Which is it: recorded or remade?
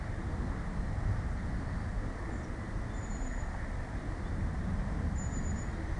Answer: recorded